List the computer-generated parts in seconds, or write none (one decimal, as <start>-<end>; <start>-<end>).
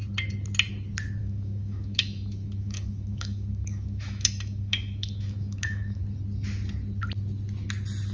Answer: 1.2-6.0